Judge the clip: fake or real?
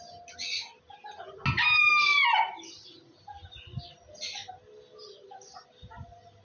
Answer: real